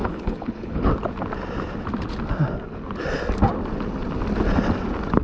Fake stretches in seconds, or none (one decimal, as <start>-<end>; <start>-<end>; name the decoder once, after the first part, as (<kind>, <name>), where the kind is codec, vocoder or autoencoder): 0.0-0.9 (codec, HILCodec)